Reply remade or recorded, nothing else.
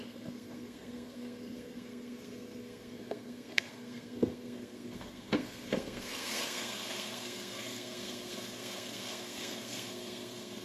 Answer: remade